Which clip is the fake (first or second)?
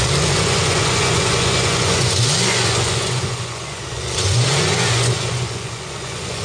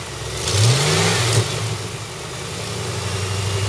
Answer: first